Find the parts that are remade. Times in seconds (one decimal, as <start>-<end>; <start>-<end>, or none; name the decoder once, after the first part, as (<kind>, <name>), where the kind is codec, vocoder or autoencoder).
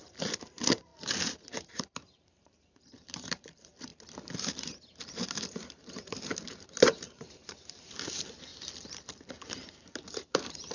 0.0-0.9 (vocoder, BigVGAN v2); 1.7-3.9; 5.0-8.5; 9.7-10.7